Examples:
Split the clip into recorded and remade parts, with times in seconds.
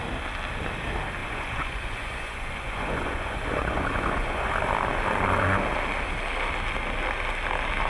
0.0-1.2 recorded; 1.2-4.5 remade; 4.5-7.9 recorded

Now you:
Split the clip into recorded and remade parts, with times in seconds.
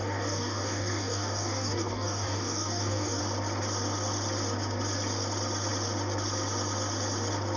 0.0-3.2 remade; 3.2-7.6 recorded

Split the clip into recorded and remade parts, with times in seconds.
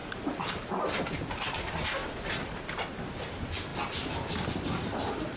0.0-5.4 recorded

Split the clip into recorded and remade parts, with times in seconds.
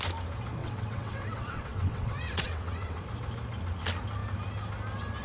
0.0-0.6 recorded; 0.6-3.0 remade; 3.0-5.2 recorded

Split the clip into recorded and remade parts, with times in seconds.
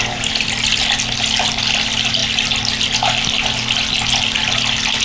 0.0-5.0 recorded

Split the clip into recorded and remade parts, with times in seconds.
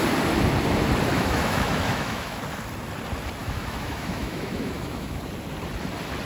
0.0-1.1 recorded; 1.1-2.4 remade; 2.4-3.4 recorded; 3.4-5.2 remade; 5.2-6.3 recorded